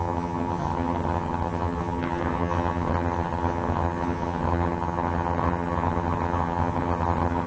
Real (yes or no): no